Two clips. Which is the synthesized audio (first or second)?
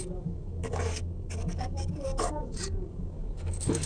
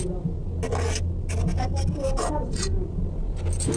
first